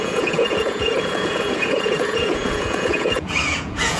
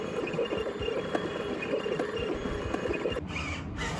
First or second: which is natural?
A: second